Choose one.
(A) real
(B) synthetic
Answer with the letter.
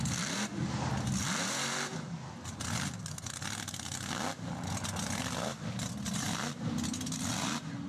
A